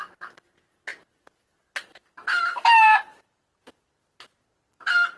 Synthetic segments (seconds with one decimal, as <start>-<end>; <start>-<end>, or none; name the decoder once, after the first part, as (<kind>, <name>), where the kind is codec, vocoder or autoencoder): none